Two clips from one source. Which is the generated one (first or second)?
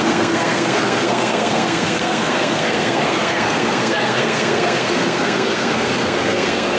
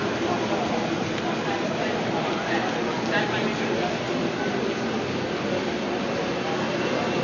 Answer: first